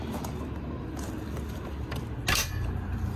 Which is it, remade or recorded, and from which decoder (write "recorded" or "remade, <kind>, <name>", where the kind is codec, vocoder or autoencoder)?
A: recorded